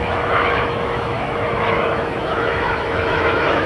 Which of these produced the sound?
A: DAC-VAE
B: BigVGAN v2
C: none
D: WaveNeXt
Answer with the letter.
A